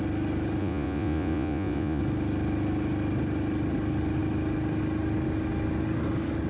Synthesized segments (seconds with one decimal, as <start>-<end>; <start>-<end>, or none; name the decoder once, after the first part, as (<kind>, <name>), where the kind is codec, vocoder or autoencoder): 0.6-2.0 (vocoder, Vocos)